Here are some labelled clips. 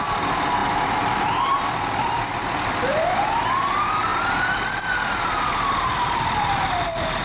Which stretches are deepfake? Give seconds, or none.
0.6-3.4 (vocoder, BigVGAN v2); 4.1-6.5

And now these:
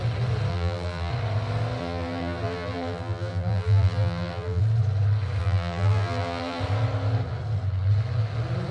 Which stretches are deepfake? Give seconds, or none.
0.5-1.1 (vocoder, BigVGAN v2); 1.8-4.6; 5.4-6.6

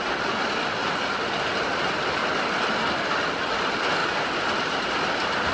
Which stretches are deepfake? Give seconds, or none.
4.0-5.1 (vocoder, BigVGAN v2)

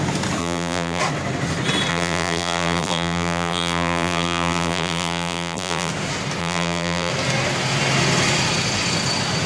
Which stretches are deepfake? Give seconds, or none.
0.4-1.0 (vocoder, BigVGAN v2); 1.9-5.9; 6.4-7.1